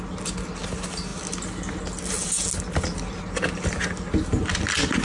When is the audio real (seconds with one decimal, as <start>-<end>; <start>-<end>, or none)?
0.0-5.0